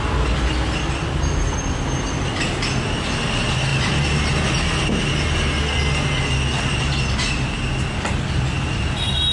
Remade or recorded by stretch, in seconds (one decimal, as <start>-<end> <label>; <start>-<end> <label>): 0.0-9.3 recorded

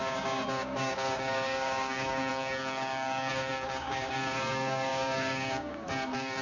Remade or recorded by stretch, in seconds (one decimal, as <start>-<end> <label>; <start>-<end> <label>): 0.0-6.4 remade

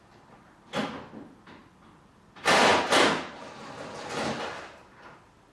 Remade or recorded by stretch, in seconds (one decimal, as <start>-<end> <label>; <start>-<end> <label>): 0.0-5.5 recorded

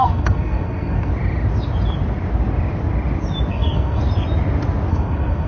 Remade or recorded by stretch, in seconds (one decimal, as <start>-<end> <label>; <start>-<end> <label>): 0.0-1.1 remade; 1.1-3.5 recorded; 3.5-4.0 remade; 4.0-4.9 recorded; 4.9-5.5 remade

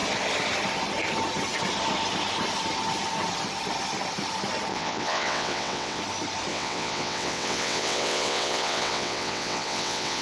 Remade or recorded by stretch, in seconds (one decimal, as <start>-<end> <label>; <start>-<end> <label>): 0.0-4.7 recorded; 4.7-6.0 remade; 6.0-6.5 recorded; 6.5-10.2 remade